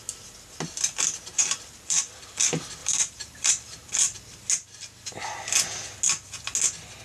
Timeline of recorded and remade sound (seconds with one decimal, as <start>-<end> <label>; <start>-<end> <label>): 0.0-1.3 recorded; 1.3-2.0 remade; 2.0-2.8 recorded; 2.8-3.5 remade; 3.5-7.0 recorded

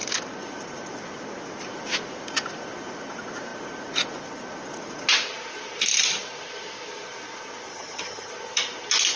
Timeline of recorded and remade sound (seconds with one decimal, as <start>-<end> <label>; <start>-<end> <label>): 0.0-7.7 recorded; 7.7-8.3 remade; 8.3-9.2 recorded